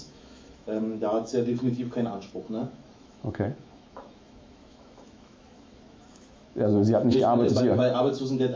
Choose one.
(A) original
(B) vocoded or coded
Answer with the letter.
B